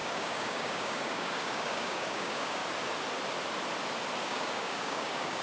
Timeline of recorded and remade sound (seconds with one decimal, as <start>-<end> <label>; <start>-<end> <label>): 0.0-2.6 remade; 2.6-4.2 recorded; 4.2-5.4 remade